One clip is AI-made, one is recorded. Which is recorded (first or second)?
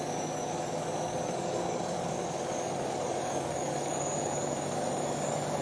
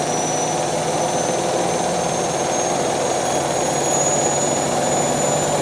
second